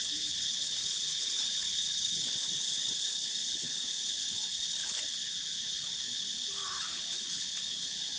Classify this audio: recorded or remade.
remade